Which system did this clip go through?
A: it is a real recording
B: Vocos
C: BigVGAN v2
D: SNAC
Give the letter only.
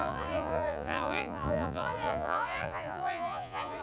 B